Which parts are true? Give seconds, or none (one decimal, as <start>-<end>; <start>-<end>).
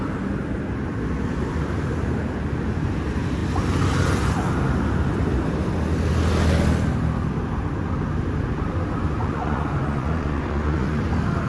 0.0-9.2; 11.0-11.5